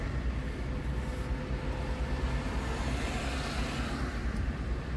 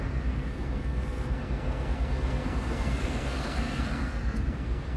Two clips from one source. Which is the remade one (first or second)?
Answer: second